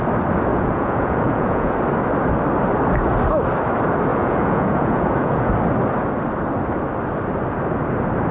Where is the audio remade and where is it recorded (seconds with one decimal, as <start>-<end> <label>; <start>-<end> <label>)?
0.0-0.5 recorded; 0.5-1.7 remade; 1.7-4.1 recorded; 4.1-5.5 remade; 5.5-8.3 recorded